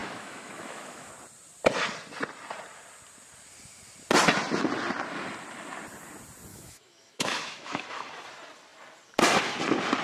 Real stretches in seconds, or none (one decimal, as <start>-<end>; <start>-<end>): 1.1-6.5; 8.0-10.0